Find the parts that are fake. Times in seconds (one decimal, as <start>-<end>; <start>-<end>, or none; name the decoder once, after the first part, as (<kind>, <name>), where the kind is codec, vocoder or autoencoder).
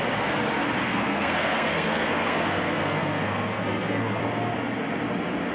0.9-4.2 (codec, SNAC)